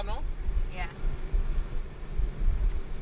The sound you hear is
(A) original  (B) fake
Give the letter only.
A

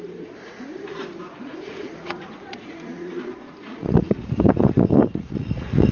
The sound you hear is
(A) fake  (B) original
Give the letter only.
A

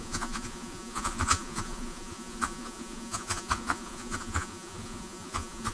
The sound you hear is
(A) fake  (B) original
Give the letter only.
A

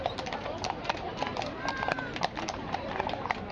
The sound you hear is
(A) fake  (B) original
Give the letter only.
A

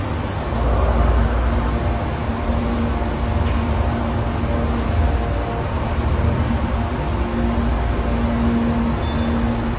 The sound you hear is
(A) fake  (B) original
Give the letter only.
B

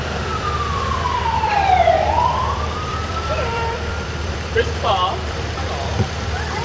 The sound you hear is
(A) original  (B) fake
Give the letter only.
B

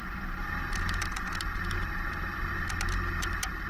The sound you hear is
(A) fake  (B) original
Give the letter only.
B